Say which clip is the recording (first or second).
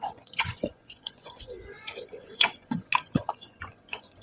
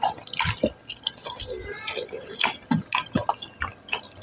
second